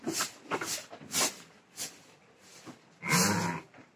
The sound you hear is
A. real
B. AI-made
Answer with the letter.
A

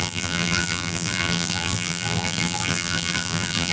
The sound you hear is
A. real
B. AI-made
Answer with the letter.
B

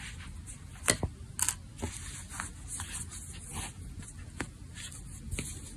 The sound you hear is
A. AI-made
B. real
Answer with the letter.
B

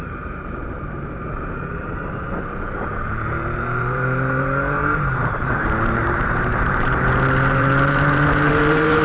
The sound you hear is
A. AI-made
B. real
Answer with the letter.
A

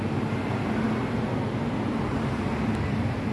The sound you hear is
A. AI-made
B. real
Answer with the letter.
B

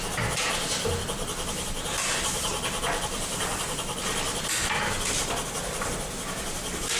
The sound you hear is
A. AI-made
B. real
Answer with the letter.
B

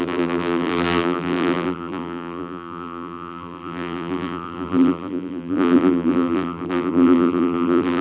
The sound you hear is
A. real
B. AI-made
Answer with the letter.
B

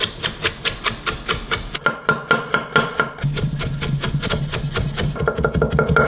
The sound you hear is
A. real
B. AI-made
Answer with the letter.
A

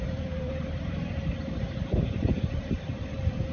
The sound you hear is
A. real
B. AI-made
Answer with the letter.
B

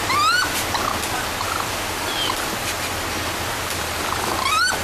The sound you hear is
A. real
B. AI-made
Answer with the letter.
A